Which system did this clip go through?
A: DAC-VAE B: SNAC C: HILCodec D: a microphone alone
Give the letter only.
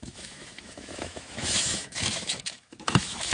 A